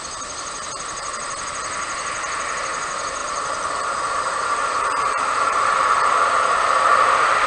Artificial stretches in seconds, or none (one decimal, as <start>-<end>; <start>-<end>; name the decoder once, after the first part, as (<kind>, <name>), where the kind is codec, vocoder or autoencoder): 3.2-5.6 (vocoder, BigVGAN v2)